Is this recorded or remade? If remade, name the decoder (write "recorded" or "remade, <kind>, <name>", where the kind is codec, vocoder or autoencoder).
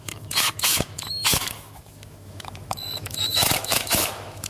remade, autoencoder, DAC-VAE